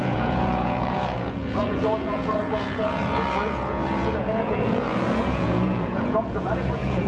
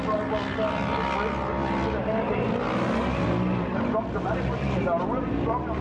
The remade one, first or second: first